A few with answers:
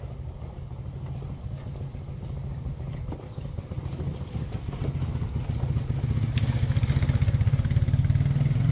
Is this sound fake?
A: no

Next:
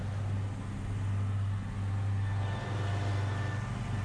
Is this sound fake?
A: no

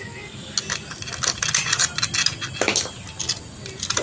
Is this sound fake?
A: no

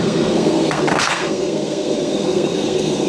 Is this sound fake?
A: yes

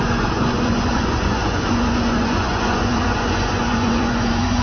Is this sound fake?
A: yes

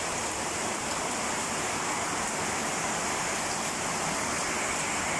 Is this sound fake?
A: no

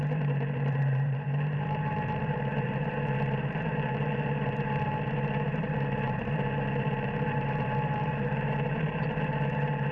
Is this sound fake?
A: yes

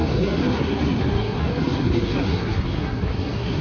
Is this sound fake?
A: yes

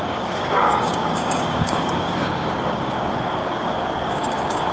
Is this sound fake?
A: yes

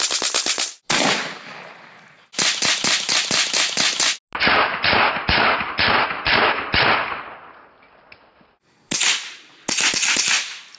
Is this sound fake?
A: no